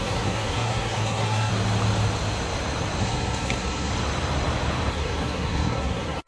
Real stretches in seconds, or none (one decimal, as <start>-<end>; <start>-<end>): 1.5-3.0; 3.9-4.9